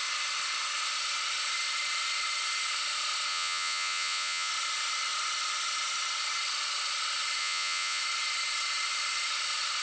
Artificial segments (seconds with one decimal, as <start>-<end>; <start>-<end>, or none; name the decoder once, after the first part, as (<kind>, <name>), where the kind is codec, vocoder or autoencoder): 3.3-4.5 (vocoder, Vocos); 7.4-8.0